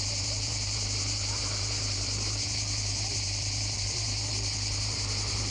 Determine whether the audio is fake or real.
fake